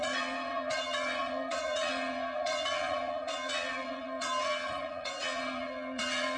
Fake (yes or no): yes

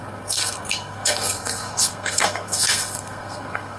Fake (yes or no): yes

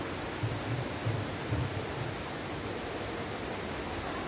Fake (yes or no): no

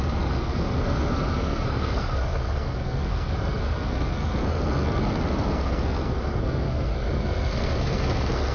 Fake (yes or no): yes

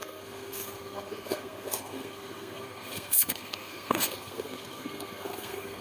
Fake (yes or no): yes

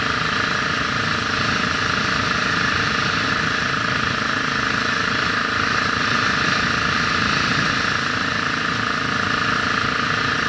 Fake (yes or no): no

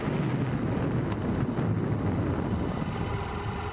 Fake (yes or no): no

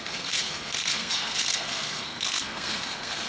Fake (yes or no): yes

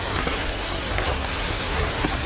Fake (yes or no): yes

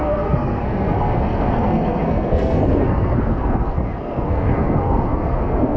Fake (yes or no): yes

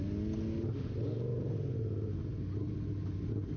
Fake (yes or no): no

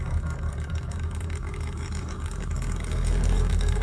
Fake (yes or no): yes